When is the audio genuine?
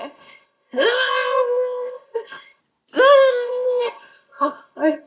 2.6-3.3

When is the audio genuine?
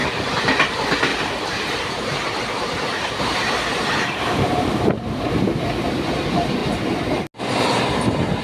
0.0-1.1; 5.3-8.4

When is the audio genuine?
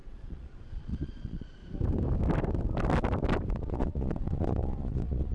1.6-3.5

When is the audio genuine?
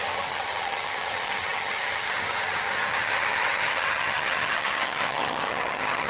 none